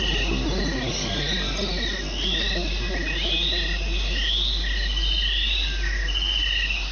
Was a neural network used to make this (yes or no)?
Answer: no